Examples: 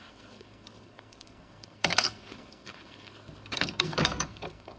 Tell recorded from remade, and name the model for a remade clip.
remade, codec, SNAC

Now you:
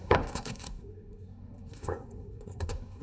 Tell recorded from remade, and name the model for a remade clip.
remade, codec, SNAC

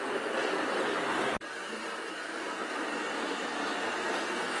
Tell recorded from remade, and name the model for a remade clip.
recorded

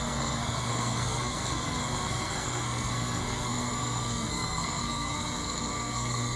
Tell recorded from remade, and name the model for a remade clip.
remade, codec, SNAC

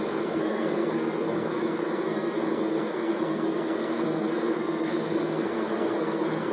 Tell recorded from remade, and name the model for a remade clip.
remade, codec, SNAC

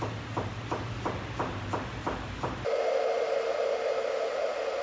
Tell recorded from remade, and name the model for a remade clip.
recorded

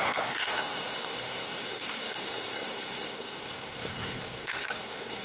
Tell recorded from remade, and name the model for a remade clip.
remade, codec, SNAC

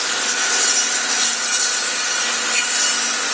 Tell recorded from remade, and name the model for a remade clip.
recorded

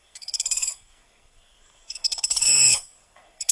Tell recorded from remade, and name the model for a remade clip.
remade, codec, SNAC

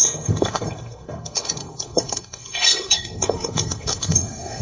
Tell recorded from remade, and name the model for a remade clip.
remade, codec, SNAC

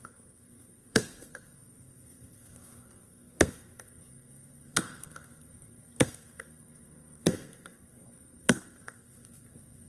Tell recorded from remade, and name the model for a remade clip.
remade, codec, SNAC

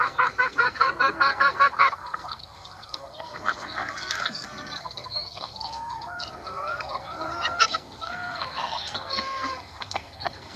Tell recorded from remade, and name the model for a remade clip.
remade, codec, SNAC